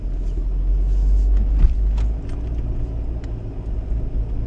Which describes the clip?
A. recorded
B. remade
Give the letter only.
A